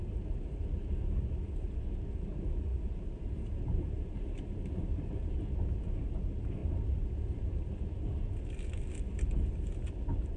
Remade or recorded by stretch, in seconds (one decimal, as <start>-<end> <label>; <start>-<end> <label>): 0.0-2.7 recorded; 2.7-5.3 remade; 5.3-10.4 recorded